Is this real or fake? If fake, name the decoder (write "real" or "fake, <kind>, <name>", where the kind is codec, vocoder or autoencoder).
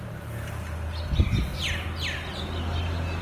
real